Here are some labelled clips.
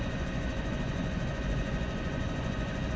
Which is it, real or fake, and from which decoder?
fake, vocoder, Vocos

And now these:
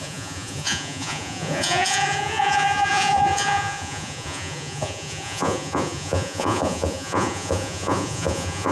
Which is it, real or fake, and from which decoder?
fake, vocoder, Vocos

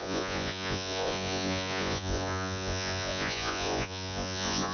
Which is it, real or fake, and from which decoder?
fake, vocoder, Vocos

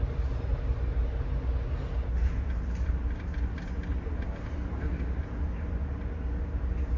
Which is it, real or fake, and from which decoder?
real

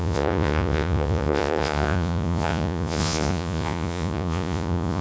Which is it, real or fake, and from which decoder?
fake, vocoder, Vocos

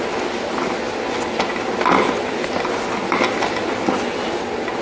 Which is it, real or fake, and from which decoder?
real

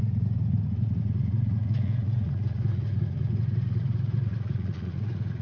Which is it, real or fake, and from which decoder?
fake, vocoder, Vocos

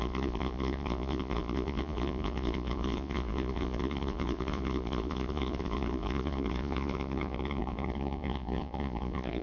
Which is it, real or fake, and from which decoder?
fake, vocoder, Vocos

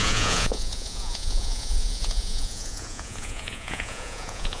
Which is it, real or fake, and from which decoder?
fake, vocoder, Vocos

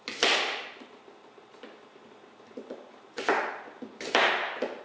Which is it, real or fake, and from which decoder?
real